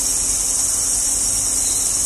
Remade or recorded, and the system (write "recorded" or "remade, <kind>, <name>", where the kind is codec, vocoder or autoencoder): recorded